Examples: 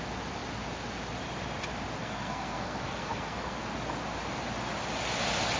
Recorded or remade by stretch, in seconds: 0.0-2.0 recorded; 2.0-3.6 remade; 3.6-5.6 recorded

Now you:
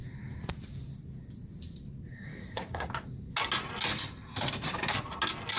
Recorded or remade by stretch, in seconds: 0.0-2.1 recorded; 2.1-2.9 remade; 2.9-5.6 recorded

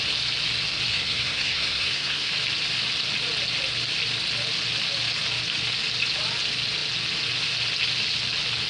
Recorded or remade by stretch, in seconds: 0.0-0.9 recorded; 0.9-2.3 remade; 2.3-8.7 recorded

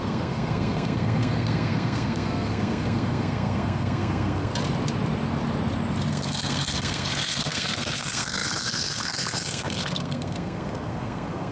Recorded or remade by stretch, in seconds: 0.0-4.5 remade; 4.5-6.1 recorded; 6.1-11.5 remade

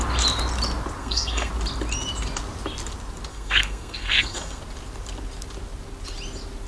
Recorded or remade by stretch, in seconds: 0.0-1.0 recorded; 1.0-1.5 remade; 1.5-3.3 recorded; 3.3-4.6 remade; 4.6-6.7 recorded

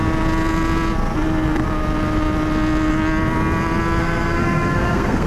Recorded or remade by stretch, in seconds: 0.0-4.0 recorded; 4.0-5.3 remade

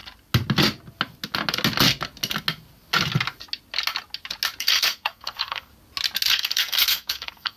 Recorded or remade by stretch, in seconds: 0.0-4.6 recorded; 4.6-5.7 remade; 5.7-6.3 recorded; 6.3-7.6 remade

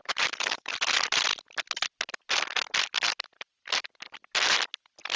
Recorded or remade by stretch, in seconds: 0.0-5.2 recorded